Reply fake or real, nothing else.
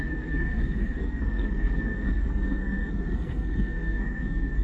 fake